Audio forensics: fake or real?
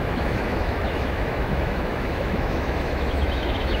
fake